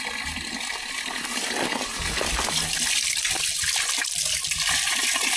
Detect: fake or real real